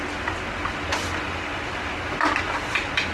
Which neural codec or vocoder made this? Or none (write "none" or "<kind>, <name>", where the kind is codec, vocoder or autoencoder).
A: none